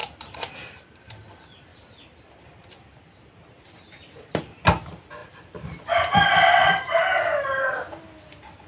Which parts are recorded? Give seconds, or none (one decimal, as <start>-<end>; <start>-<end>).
0.8-1.7; 4.4-5.2